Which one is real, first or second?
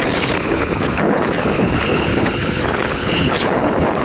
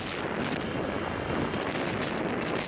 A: second